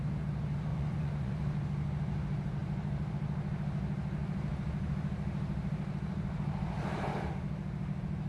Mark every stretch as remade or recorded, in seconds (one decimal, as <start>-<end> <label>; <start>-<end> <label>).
0.0-0.7 recorded; 0.7-1.3 remade; 1.3-8.3 recorded